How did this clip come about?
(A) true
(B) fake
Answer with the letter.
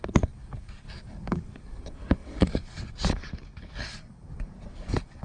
B